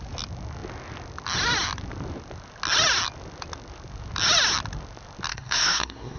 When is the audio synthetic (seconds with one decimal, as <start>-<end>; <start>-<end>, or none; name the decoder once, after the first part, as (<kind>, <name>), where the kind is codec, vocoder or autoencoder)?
5.3-6.2 (codec, SNAC)